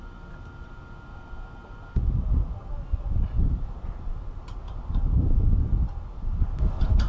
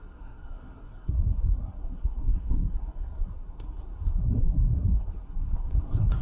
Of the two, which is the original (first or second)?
first